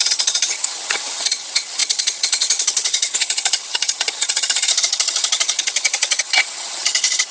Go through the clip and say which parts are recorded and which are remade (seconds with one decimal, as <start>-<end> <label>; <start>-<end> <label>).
0.0-7.3 remade